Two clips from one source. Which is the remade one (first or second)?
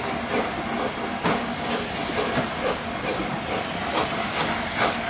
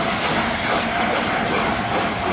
second